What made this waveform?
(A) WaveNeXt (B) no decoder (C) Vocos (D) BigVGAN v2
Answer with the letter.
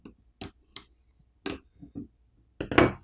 B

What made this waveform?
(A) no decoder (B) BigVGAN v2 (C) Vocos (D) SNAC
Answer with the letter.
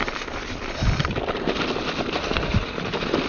B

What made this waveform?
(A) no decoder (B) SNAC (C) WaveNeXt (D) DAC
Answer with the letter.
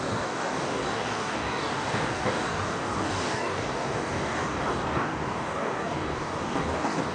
D